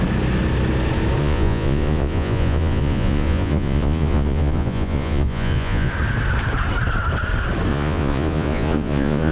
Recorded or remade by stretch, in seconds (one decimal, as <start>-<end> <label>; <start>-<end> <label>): 0.0-1.2 recorded; 1.2-5.9 remade; 5.9-7.7 recorded; 7.7-9.3 remade